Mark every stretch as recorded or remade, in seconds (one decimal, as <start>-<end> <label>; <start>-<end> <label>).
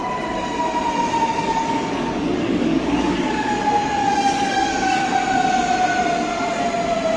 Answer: 0.0-1.3 recorded; 1.3-3.6 remade; 3.6-4.0 recorded; 4.0-5.0 remade; 5.0-7.2 recorded